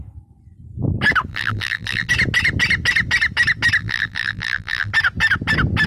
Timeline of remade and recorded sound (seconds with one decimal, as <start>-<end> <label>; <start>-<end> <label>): 0.0-1.3 recorded; 1.3-2.1 remade; 2.1-3.8 recorded; 3.8-4.9 remade; 4.9-5.9 recorded